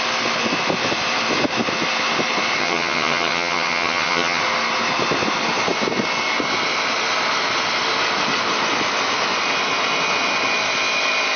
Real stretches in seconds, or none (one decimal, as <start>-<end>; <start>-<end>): 0.0-2.6; 4.4-11.4